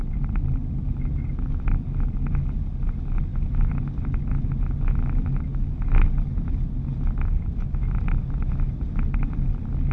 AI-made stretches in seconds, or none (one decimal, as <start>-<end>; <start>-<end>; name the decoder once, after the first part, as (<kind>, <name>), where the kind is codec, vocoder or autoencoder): none